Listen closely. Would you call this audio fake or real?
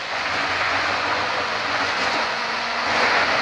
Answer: fake